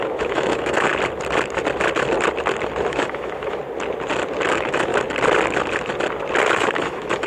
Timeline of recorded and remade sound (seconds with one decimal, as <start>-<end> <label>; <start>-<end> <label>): 0.0-0.9 remade; 0.9-2.8 recorded; 2.8-3.6 remade; 3.6-4.5 recorded; 4.5-4.9 remade; 4.9-6.5 recorded; 6.5-7.3 remade